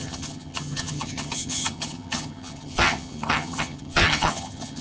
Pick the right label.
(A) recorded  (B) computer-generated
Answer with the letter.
B